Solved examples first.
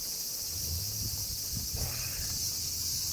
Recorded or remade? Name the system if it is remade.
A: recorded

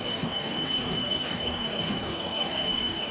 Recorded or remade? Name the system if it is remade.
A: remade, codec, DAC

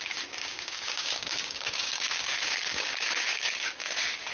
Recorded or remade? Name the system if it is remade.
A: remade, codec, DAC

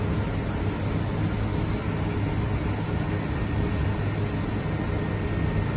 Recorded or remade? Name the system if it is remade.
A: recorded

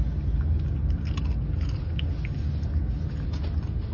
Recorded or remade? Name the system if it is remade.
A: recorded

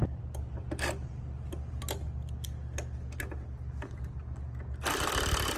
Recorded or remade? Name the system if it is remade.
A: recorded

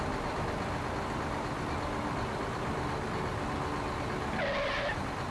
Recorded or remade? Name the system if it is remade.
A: recorded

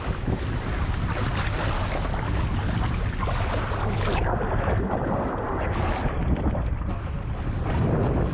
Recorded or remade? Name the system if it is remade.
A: recorded